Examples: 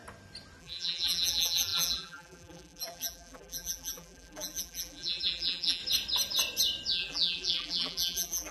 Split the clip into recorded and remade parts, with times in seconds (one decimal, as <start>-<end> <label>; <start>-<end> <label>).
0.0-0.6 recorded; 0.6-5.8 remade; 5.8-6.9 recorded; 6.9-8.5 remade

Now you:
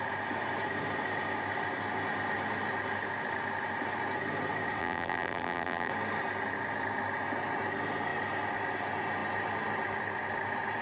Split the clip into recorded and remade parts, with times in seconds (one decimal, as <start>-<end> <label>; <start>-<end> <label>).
0.0-4.8 recorded; 4.8-5.9 remade; 5.9-10.8 recorded

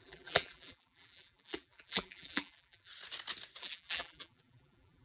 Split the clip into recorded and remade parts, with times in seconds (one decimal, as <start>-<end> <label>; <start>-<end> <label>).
0.0-2.9 remade; 2.9-3.6 recorded; 3.6-5.0 remade

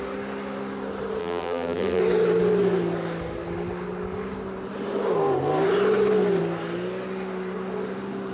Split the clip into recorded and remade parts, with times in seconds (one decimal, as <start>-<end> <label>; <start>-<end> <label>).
0.0-1.2 recorded; 1.2-2.0 remade; 2.0-8.3 recorded

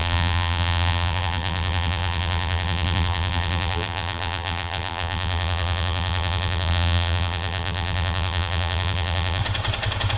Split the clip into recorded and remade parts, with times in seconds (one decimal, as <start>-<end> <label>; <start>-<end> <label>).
0.0-9.4 remade; 9.4-10.2 recorded